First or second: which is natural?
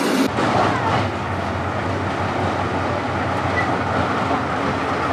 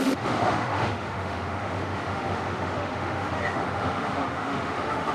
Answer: first